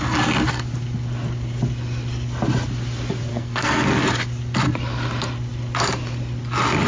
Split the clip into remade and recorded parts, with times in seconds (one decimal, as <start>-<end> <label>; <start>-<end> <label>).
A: 0.0-3.3 recorded; 3.3-4.0 remade; 4.0-6.9 recorded